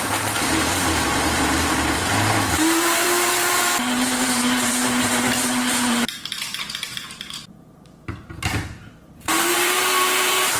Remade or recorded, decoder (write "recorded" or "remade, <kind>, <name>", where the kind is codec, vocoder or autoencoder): remade, vocoder, BigVGAN v2